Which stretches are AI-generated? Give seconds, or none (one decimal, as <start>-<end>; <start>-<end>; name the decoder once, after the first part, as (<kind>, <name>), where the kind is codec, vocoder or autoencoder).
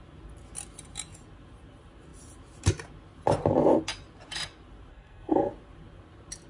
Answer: 4.9-5.5 (codec, SNAC)